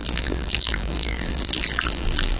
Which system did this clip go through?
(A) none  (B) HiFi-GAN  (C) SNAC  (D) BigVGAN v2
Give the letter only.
D